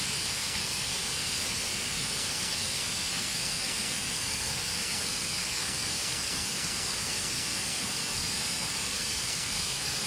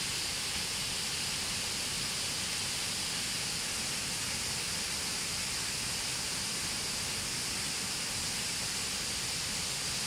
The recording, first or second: second